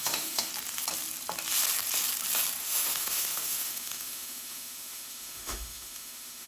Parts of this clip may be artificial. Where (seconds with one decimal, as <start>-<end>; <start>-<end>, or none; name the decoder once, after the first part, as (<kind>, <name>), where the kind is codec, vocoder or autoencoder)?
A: 0.0-0.5 (autoencoder, DAC-VAE); 2.6-6.5